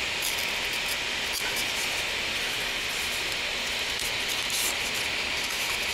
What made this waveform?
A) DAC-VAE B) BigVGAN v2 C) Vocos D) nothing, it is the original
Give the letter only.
D